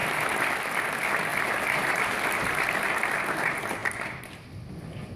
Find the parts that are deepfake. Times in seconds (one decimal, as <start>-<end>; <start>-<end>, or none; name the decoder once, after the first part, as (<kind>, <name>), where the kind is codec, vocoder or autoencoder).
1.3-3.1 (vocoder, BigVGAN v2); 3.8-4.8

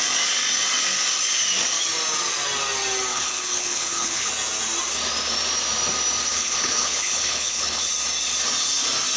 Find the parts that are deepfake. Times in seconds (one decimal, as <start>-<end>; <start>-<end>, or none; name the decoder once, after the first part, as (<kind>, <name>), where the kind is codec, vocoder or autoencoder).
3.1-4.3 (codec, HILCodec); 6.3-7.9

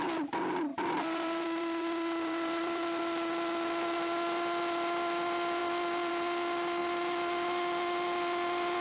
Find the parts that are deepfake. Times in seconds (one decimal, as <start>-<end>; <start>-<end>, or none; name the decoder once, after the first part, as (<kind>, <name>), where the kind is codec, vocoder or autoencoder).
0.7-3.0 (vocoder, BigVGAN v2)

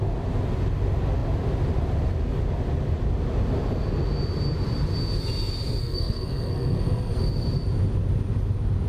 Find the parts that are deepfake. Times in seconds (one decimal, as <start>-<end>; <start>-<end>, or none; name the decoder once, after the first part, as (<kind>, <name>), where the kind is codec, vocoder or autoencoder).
5.8-7.2 (codec, SNAC)

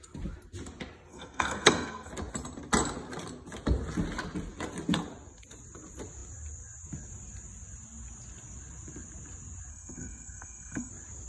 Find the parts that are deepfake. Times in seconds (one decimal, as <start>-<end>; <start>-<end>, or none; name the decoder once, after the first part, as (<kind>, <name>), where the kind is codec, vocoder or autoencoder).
1.1-2.1 (codec, SNAC); 9.7-10.9

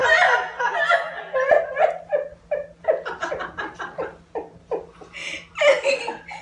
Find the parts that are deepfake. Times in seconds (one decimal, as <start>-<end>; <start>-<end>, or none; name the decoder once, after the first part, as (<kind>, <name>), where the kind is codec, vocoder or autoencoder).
none

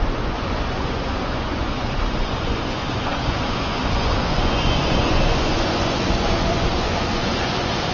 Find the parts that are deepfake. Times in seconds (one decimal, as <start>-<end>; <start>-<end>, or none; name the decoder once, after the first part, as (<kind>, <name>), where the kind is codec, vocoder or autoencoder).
0.0-7.9 (vocoder, Vocos)

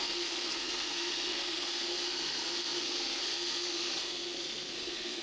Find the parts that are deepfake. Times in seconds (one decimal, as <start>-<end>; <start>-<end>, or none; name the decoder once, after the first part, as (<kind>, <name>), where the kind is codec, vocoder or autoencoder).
0.0-5.2 (codec, SNAC)